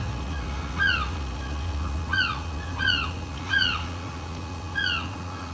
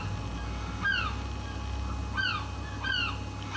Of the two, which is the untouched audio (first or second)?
second